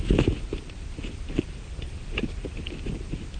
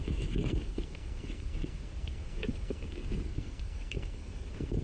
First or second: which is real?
first